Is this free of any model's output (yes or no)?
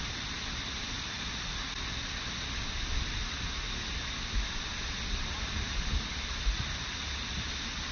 yes